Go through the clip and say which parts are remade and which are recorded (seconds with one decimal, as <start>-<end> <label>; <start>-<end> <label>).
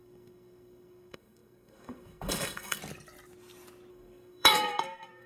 0.0-2.8 remade; 2.8-3.9 recorded; 3.9-5.3 remade